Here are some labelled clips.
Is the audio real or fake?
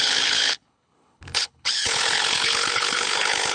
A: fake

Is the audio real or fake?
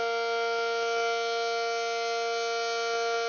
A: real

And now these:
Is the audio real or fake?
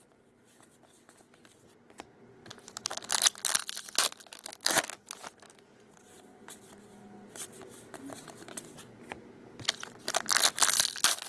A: real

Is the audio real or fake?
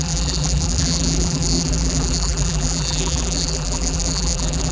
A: fake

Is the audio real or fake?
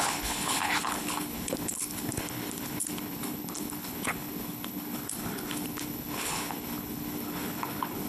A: fake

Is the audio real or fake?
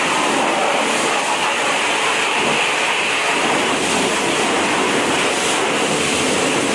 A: real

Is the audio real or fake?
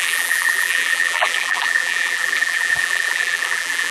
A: fake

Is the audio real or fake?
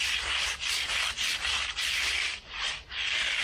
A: real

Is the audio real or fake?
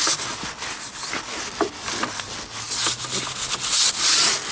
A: real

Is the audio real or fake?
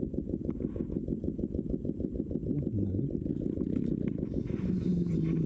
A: real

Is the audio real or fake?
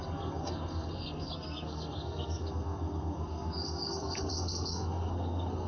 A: fake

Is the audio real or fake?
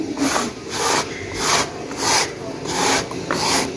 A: real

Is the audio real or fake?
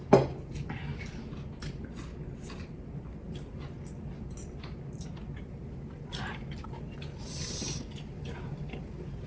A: real